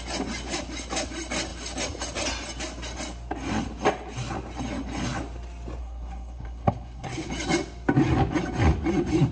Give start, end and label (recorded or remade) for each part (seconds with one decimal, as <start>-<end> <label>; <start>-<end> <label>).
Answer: 0.0-5.8 recorded; 5.8-7.3 remade; 7.3-9.3 recorded